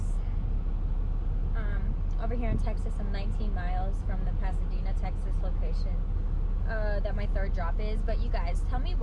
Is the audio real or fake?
real